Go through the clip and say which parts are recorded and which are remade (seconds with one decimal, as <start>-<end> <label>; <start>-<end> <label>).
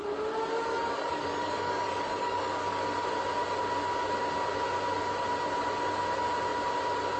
0.0-0.7 recorded; 0.7-2.8 remade; 2.8-7.2 recorded